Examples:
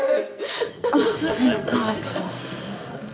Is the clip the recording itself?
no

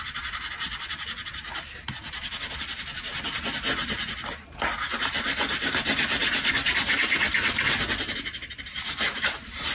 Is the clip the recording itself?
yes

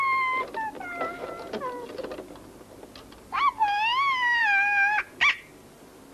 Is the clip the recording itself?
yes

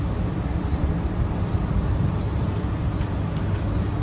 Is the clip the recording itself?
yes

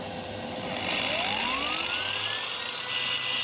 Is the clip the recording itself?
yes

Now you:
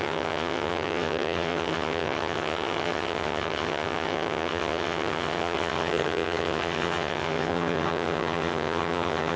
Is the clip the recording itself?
no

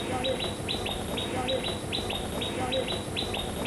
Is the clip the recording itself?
yes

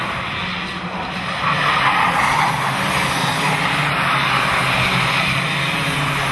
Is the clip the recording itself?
yes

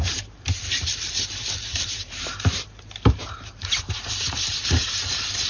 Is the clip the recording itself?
no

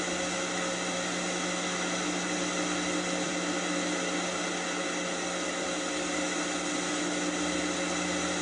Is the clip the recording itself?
yes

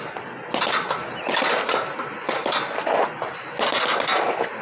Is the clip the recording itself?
yes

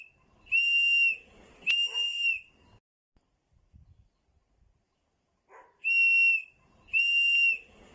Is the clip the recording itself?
yes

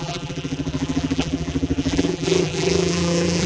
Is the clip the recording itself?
no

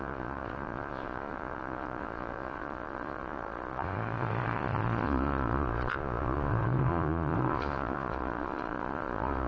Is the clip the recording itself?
no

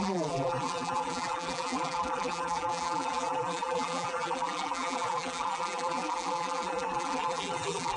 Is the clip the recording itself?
no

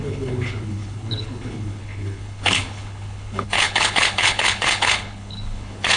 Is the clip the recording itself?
no